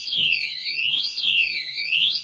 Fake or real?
fake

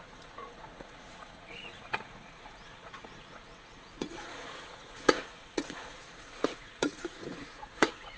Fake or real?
fake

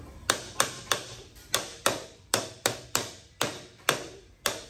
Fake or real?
fake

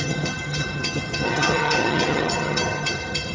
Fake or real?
fake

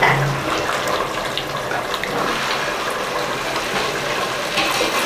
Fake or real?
real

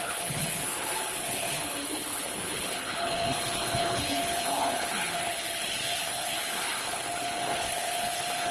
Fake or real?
fake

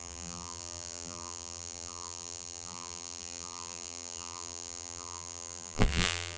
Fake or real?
fake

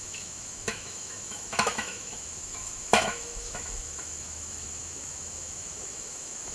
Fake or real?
fake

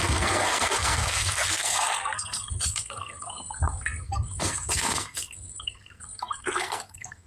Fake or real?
fake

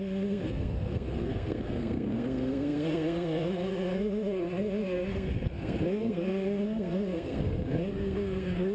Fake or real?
fake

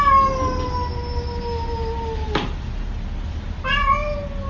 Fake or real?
real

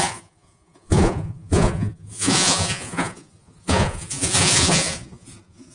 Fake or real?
fake